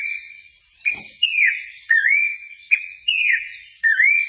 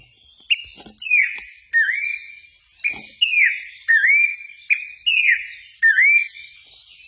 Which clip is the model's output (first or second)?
first